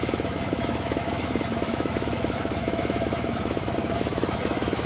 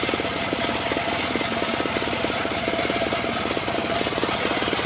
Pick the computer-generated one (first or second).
first